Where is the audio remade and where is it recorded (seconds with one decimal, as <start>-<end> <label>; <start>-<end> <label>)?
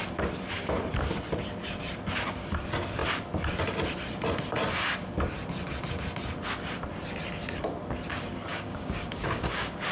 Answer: 0.0-8.5 recorded; 8.5-9.9 remade